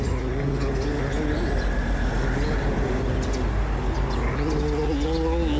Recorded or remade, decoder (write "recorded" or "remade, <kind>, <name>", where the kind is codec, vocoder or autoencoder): recorded